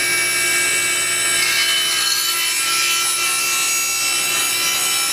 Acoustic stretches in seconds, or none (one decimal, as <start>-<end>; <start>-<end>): 0.0-5.1